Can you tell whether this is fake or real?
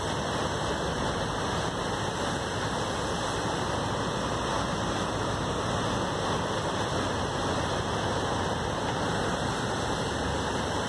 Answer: real